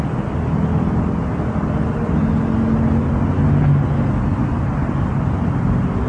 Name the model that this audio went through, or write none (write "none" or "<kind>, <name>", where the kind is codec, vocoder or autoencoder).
none